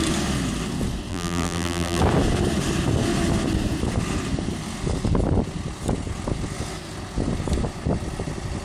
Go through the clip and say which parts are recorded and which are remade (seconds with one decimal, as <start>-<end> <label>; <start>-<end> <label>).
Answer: 0.0-1.1 recorded; 1.1-2.0 remade; 2.0-8.6 recorded